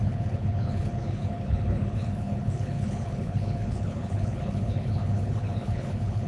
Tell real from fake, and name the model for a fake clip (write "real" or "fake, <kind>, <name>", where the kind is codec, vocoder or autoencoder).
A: fake, codec, HILCodec